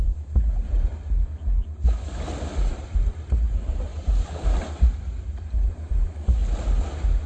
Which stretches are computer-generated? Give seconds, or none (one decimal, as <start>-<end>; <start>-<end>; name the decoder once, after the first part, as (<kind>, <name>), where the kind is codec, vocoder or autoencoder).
0.0-0.9 (vocoder, BigVGAN v2); 2.7-6.4